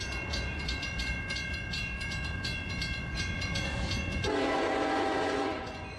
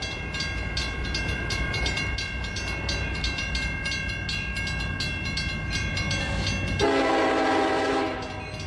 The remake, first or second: first